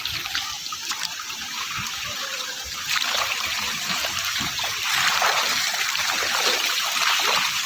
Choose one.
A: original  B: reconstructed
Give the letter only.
B